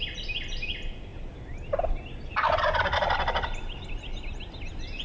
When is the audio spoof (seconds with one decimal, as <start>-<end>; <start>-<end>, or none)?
none